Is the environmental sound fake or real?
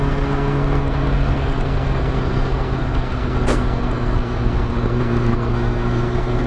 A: fake